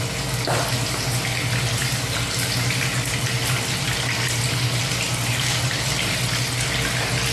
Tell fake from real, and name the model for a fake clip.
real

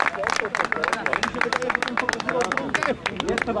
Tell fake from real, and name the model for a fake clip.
real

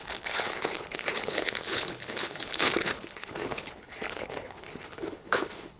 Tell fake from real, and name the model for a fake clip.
fake, codec, HILCodec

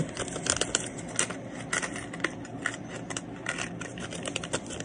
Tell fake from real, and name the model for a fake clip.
real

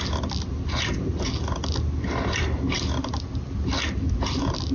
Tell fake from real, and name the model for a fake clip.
real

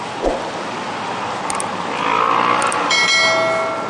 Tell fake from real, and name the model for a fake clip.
real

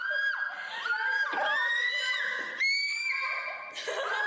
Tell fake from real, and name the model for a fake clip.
real